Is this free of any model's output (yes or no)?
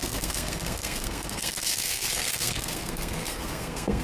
no